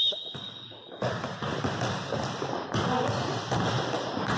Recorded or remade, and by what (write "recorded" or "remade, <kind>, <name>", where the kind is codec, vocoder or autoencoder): recorded